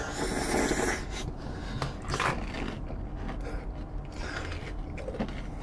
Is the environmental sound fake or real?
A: real